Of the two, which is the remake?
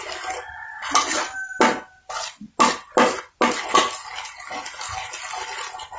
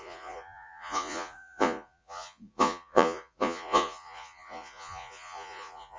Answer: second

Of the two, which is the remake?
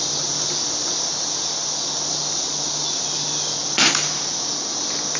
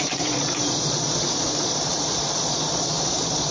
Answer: second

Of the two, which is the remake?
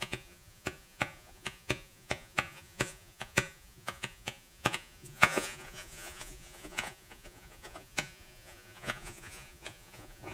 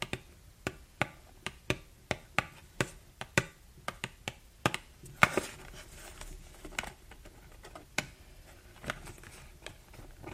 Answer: first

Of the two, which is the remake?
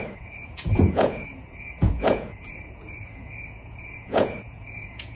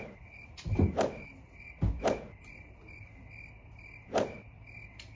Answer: first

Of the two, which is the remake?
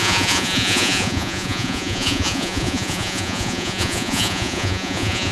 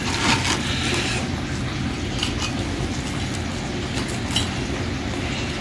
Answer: first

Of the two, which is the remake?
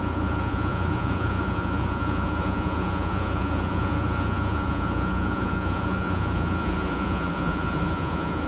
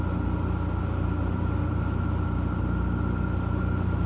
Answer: first